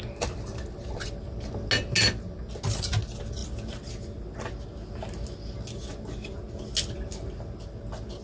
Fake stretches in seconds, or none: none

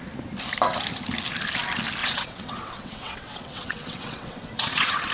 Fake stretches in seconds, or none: 2.0-5.1 (vocoder, WaveNeXt)

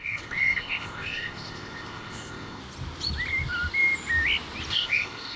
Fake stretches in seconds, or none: 0.0-2.6 (codec, ZipCodec); 4.7-5.4